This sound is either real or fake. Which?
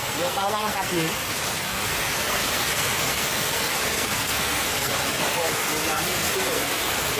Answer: fake